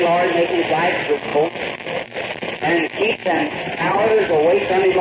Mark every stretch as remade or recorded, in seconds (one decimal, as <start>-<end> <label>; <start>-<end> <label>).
0.0-3.2 recorded; 3.2-4.0 remade; 4.0-5.0 recorded